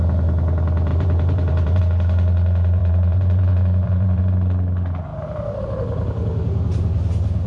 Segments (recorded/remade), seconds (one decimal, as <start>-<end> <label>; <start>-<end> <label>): 0.0-0.9 recorded; 0.9-1.8 remade; 1.8-2.8 recorded; 2.8-4.2 remade; 4.2-7.5 recorded